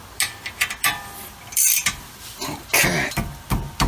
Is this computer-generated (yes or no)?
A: no